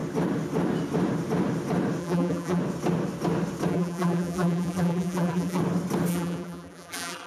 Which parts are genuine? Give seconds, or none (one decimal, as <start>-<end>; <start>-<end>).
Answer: 0.0-2.0; 2.6-3.7; 5.6-6.1